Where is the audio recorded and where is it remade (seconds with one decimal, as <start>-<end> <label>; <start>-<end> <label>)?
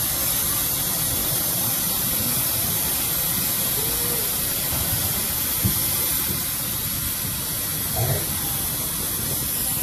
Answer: 0.0-1.2 recorded; 1.2-3.1 remade; 3.1-9.8 recorded